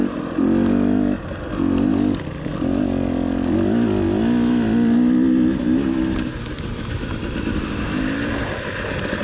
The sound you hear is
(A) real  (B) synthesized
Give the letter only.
A